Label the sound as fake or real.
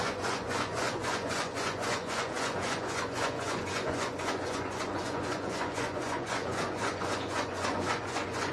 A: fake